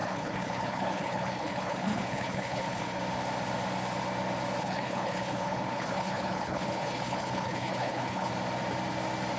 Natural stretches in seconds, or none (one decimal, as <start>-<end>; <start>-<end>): 3.0-4.6; 8.3-9.4